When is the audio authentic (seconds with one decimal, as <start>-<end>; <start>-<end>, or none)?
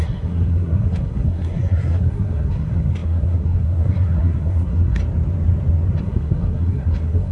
5.0-6.0